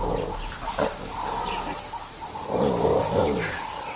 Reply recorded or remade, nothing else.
recorded